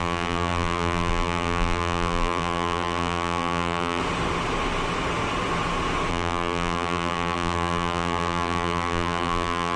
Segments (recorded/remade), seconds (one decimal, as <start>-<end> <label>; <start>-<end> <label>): 0.0-4.0 remade; 4.0-6.1 recorded; 6.1-9.8 remade